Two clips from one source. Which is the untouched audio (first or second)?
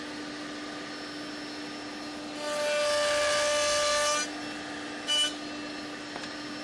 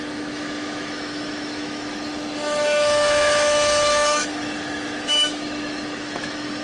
first